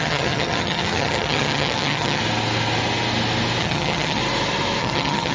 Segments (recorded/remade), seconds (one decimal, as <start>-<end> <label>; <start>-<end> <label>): 0.0-2.2 remade; 2.2-3.6 recorded; 3.6-4.2 remade; 4.2-4.8 recorded; 4.8-5.3 remade